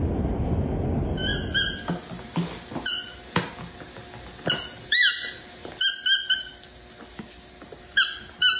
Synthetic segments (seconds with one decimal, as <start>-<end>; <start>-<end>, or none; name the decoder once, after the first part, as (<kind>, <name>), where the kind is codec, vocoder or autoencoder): none